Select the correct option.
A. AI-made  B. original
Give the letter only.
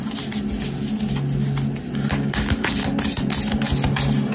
B